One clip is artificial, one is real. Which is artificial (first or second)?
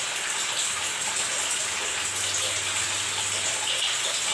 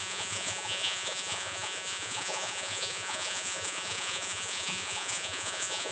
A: second